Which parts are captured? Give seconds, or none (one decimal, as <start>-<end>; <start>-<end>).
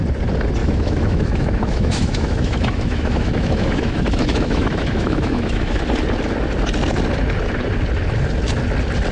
0.0-0.6; 5.8-9.1